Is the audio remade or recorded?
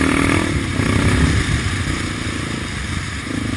remade